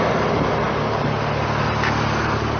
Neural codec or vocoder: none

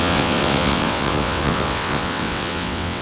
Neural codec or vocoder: vocoder, WaveNeXt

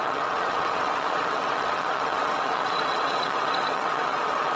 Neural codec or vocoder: vocoder, WaveNeXt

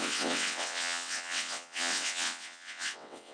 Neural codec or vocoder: vocoder, WaveNeXt